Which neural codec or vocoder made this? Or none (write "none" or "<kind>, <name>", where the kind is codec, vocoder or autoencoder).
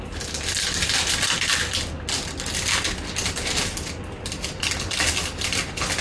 none